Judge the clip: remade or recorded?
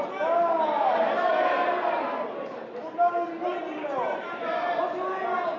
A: recorded